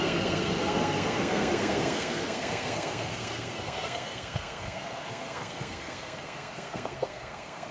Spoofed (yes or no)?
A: yes